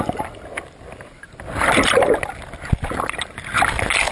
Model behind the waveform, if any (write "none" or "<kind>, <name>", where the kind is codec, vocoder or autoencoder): none